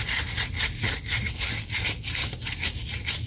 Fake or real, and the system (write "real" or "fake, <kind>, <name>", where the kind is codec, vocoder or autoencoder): real